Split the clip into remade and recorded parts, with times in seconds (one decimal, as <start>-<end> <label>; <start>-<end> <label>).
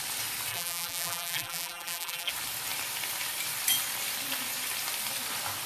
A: 0.0-0.5 recorded; 0.5-2.3 remade; 2.3-5.7 recorded